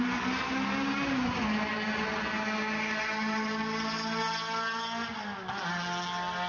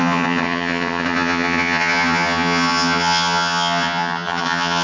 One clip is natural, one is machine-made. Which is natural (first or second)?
first